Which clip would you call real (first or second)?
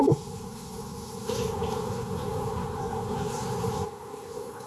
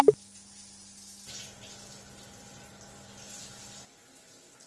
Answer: second